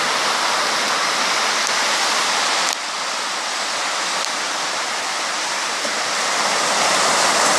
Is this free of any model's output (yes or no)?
yes